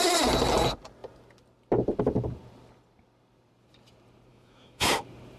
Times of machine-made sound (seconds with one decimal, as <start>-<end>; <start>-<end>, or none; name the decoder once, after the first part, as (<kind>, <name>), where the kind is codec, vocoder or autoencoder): 4.3-4.9 (autoencoder, DAC-VAE)